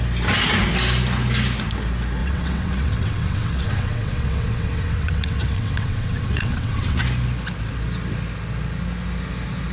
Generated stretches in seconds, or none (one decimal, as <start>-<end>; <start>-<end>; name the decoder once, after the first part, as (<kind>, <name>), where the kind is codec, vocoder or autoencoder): 2.2-7.0 (vocoder, WaveNeXt)